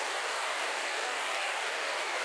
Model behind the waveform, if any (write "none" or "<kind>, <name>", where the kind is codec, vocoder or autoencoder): codec, DAC